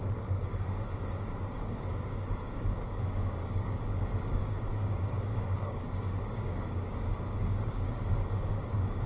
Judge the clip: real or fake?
fake